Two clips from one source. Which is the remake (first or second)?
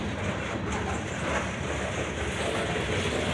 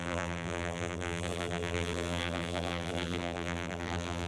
second